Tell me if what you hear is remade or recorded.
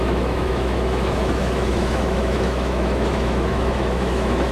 remade